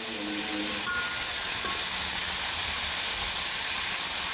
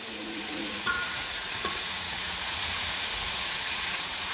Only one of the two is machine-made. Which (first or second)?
second